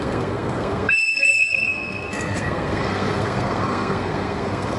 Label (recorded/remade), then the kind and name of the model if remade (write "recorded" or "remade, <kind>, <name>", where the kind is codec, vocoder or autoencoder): remade, codec, SNAC